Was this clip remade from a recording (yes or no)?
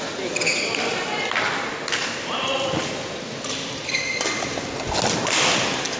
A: no